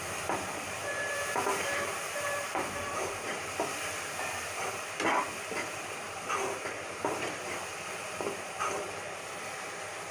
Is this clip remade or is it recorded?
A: remade